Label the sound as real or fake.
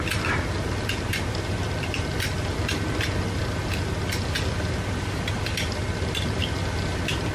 real